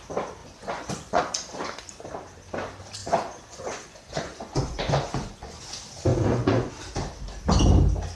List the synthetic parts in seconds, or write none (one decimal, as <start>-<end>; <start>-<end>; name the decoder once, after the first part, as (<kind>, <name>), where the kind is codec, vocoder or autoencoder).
0.4-1.2 (vocoder, Vocos); 3.0-5.6; 6.1-6.7